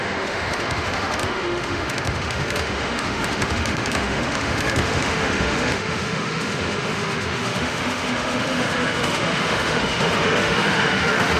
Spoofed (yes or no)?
yes